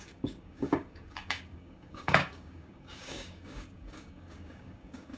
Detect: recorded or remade remade